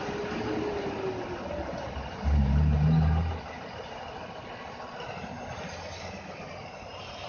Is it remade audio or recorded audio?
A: recorded